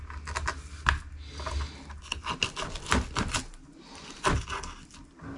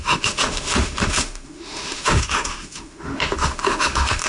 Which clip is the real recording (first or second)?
first